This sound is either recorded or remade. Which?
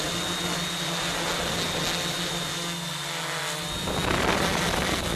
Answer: recorded